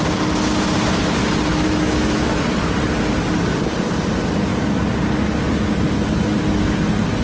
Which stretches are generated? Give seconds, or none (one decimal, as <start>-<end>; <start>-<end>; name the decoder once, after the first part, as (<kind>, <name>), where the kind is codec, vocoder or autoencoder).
1.5-2.4 (autoencoder, DAC-VAE)